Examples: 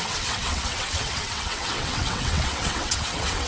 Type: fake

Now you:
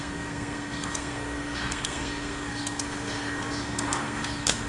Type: fake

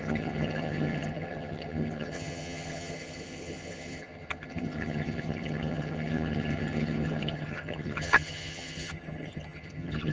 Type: fake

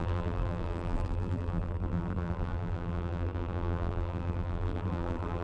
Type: fake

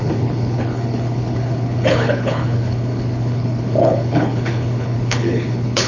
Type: fake